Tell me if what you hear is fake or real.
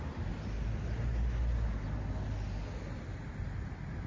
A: real